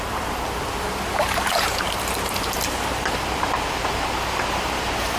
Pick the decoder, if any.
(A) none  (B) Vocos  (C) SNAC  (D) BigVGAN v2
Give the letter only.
D